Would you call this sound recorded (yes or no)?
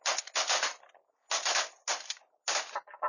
yes